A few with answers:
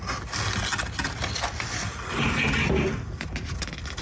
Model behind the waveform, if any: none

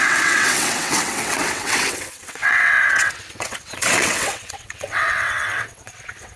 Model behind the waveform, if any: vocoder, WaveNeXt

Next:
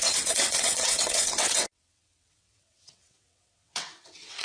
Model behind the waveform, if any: vocoder, WaveNeXt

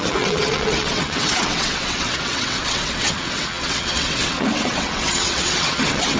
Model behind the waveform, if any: vocoder, WaveNeXt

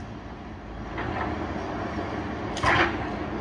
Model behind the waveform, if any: none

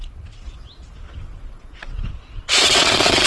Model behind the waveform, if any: vocoder, WaveNeXt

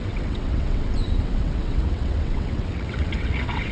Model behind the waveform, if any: vocoder, WaveNeXt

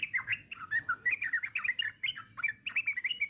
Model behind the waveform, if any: none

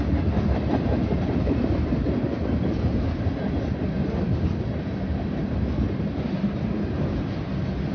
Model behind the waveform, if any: none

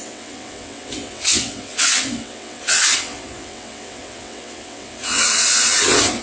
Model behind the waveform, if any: vocoder, WaveNeXt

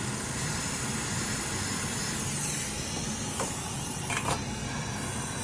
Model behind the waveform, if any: none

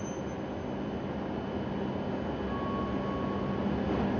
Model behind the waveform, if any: none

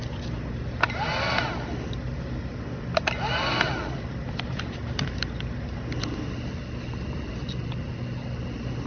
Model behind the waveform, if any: none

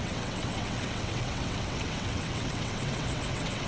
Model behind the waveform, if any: vocoder, WaveNeXt